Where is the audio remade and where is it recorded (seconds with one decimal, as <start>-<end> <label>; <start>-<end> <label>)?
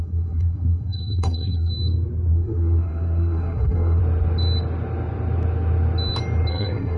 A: 0.0-1.7 remade; 1.7-2.3 recorded; 2.3-4.0 remade; 4.0-6.5 recorded; 6.5-7.0 remade